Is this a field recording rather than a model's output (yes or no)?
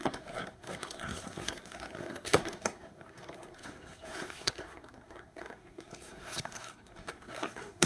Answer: no